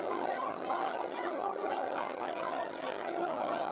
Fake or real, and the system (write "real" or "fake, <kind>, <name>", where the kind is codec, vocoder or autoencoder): fake, vocoder, HiFi-GAN